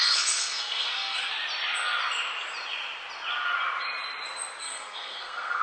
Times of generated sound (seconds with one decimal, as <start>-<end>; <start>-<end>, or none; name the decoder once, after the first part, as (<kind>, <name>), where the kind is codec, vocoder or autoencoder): 0.0-1.3 (codec, SNAC); 4.6-5.6